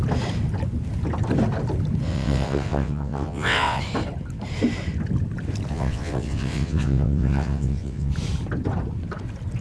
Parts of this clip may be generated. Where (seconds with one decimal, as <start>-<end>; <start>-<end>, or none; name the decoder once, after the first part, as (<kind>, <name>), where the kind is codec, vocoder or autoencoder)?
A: 2.1-3.8 (vocoder, WaveNeXt); 5.7-8.1